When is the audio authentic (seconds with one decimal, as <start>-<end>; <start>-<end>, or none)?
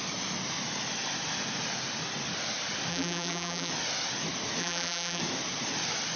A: 0.0-2.9; 3.7-4.6; 5.2-6.2